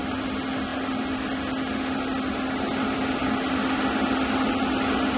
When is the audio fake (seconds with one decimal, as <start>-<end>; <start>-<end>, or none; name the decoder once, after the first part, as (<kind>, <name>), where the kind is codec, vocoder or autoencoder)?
none